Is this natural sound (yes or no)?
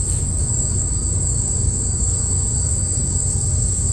no